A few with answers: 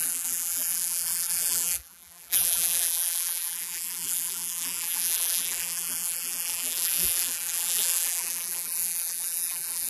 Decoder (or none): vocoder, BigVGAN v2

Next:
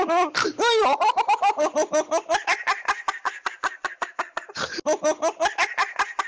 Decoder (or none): none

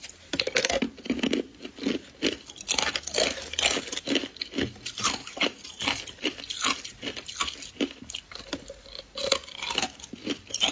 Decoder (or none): none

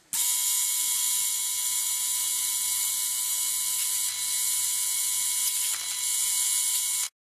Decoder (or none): none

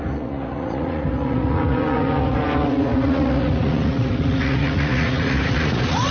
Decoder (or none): vocoder, Vocos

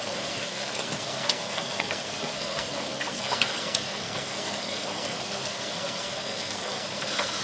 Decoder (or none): codec, SNAC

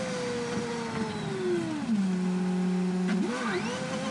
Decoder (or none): none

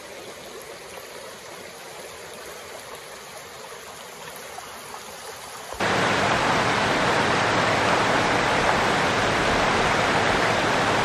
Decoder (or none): none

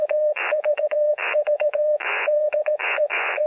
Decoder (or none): vocoder, Vocos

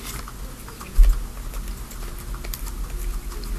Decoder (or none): none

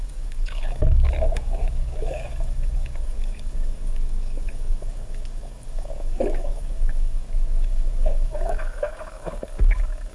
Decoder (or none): codec, DAC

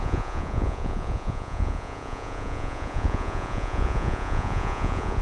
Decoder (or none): vocoder, Vocos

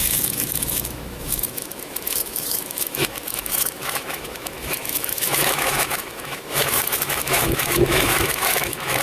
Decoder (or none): autoencoder, DAC-VAE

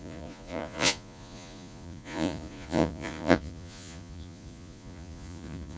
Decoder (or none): vocoder, Vocos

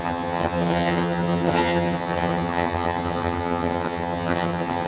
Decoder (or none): vocoder, HiFi-GAN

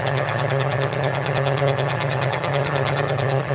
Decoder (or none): vocoder, HiFi-GAN